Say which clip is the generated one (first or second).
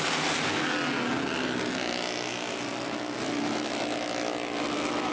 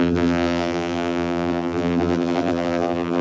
second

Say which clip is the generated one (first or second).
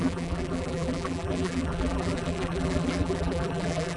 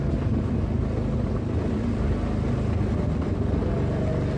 first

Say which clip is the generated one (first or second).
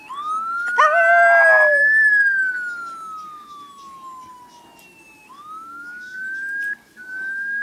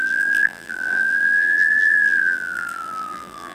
second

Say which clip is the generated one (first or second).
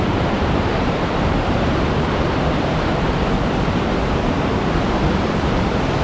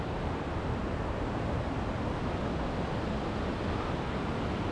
first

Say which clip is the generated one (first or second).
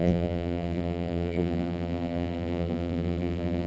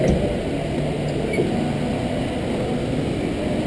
first